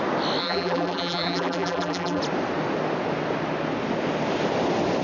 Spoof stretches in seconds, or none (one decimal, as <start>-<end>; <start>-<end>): 0.4-2.2